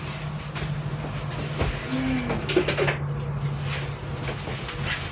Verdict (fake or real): real